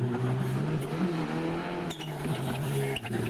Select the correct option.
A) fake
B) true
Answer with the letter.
B